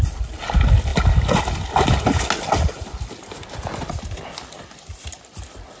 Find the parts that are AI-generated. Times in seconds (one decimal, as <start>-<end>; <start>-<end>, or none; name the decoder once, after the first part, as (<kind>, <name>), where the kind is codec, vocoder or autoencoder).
none